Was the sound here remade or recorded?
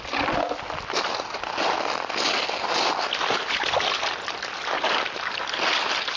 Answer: recorded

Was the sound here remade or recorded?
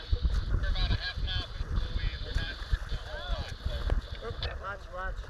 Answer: recorded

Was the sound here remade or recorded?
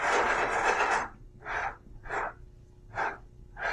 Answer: recorded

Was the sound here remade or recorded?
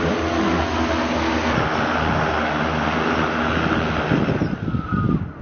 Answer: recorded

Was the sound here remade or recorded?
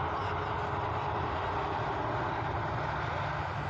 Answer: recorded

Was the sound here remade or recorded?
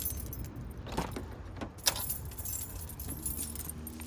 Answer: recorded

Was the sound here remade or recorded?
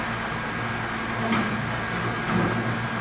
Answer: recorded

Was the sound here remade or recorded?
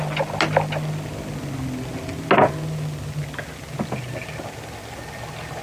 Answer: recorded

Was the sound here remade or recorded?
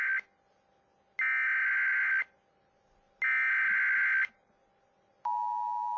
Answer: recorded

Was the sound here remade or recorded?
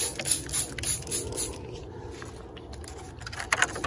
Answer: recorded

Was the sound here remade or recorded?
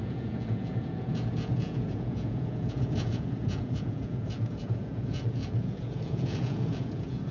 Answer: remade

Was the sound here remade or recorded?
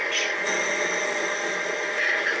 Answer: recorded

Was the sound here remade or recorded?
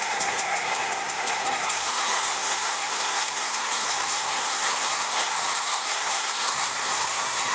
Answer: remade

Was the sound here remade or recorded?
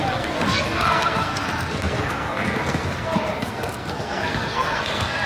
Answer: remade